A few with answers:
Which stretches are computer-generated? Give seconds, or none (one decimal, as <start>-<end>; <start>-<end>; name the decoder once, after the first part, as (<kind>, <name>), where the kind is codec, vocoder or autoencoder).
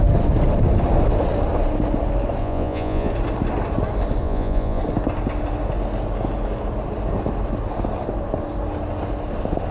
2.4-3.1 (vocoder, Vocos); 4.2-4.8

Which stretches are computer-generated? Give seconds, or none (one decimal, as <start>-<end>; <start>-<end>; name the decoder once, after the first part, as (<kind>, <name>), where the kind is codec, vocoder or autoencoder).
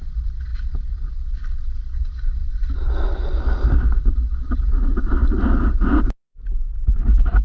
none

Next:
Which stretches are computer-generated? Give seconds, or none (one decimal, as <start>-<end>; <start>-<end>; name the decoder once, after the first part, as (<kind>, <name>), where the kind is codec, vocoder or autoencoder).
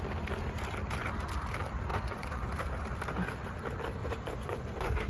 1.9-2.6 (vocoder, Vocos); 4.0-5.1